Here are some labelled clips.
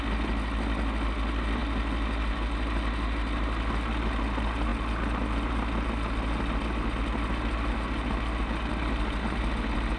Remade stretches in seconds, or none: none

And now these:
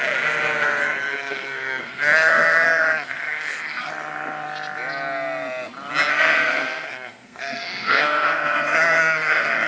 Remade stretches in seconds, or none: 0.8-3.9 (codec, SNAC); 6.1-9.7

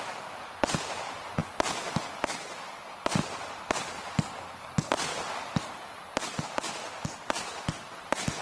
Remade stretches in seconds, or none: none

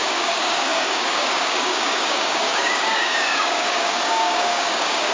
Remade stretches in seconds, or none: 0.0-5.1 (codec, DAC)

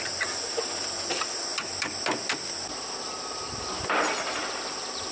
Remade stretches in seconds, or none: none